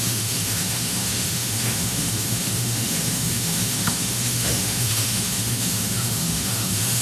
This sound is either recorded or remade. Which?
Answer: remade